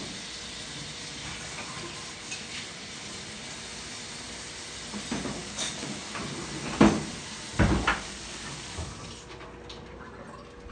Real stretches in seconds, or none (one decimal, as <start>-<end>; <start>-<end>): 0.0-5.4; 6.2-7.9; 9.0-10.7